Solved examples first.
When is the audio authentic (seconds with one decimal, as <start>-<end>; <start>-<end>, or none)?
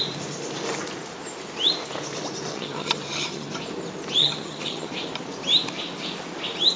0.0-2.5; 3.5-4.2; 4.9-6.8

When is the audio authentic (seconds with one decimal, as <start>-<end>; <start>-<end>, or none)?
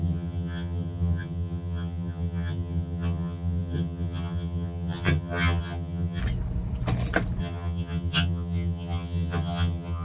6.2-7.4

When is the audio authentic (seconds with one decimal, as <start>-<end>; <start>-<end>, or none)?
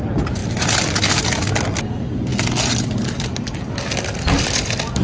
0.0-5.0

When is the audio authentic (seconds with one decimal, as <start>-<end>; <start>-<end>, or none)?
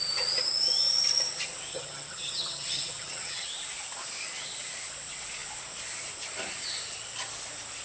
0.0-1.7; 3.5-7.8